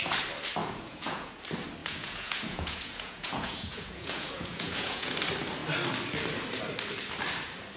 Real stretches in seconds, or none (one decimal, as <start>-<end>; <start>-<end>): 0.0-0.6; 1.4-1.8; 5.1-7.8